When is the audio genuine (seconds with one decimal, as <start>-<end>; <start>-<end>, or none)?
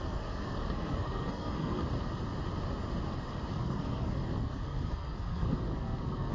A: 1.8-3.5